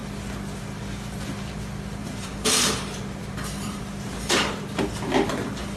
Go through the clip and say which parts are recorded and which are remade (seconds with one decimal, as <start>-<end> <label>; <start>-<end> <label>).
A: 0.0-2.0 recorded; 2.0-4.6 remade; 4.6-5.8 recorded